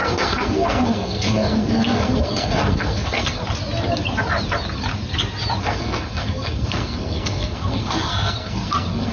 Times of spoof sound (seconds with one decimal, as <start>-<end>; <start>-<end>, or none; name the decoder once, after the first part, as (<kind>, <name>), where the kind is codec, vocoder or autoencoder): 0.0-3.4 (codec, SNAC); 5.6-9.1